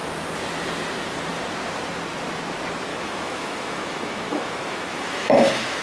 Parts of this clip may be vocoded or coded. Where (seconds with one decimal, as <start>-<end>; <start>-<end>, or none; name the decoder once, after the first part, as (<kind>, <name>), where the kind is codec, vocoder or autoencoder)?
2.9-5.8 (autoencoder, DAC-VAE)